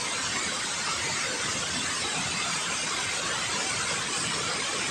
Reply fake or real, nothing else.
real